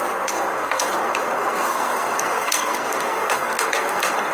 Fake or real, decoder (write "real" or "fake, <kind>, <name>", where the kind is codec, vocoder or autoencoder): fake, codec, SNAC